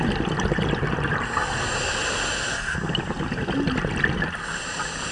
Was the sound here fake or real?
real